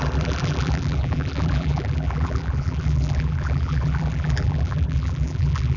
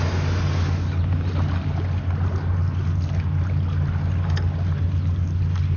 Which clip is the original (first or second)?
second